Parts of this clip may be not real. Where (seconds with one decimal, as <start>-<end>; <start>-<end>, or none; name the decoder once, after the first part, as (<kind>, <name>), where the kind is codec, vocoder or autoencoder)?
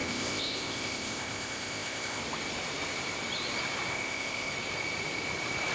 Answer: 0.0-2.2 (codec, ZipCodec); 3.9-4.5